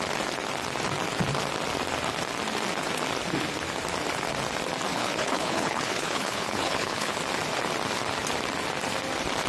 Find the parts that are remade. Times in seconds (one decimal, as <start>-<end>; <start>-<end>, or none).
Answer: 4.9-7.2